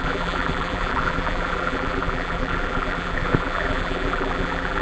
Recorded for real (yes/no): no